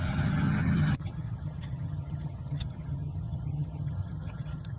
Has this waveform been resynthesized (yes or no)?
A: yes